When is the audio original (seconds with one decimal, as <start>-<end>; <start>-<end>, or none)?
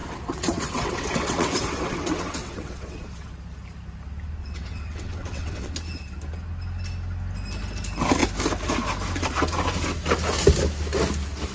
3.3-4.4; 5.7-11.5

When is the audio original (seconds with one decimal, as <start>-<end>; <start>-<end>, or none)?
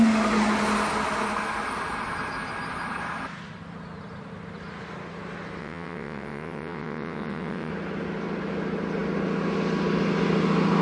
0.0-5.6; 7.7-10.8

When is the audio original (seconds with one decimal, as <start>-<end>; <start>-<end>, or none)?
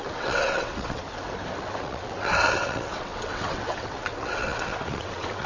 1.0-1.6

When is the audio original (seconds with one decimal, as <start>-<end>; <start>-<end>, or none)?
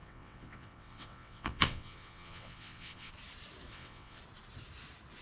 3.1-3.7; 4.2-5.2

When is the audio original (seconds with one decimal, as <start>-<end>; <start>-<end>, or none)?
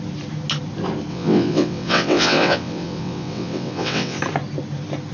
0.0-1.1; 4.2-5.1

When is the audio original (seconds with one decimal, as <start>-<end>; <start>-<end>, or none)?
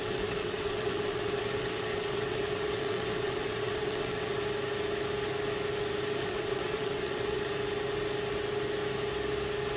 4.4-6.2; 7.5-9.8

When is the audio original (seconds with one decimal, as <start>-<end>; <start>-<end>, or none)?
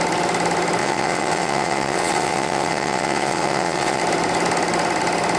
0.0-0.8; 4.0-5.4